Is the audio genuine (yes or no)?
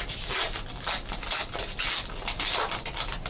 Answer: yes